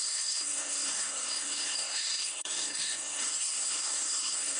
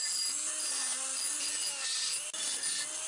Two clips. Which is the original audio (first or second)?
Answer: second